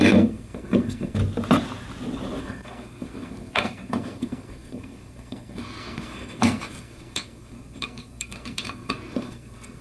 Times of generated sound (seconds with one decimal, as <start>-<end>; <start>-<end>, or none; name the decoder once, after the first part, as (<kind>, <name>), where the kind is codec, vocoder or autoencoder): 0.0-1.2 (codec, SNAC); 2.4-9.8